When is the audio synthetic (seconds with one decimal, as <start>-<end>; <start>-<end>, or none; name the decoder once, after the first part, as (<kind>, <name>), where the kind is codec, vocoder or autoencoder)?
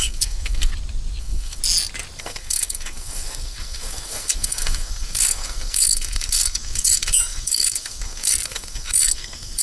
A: 0.0-0.7 (codec, SNAC); 1.2-1.6; 2.2-9.6